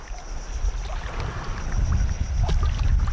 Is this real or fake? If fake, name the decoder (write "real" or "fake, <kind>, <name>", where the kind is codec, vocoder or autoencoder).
real